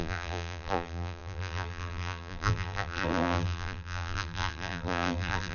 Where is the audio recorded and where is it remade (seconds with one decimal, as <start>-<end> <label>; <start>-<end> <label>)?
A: 0.0-5.5 remade